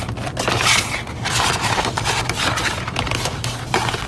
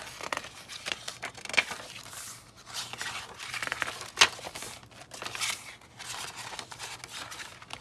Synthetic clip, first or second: first